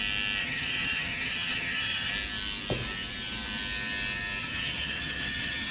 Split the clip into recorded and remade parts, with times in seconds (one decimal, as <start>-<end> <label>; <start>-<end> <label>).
0.0-0.4 recorded; 0.4-2.1 remade; 2.1-4.4 recorded; 4.4-5.7 remade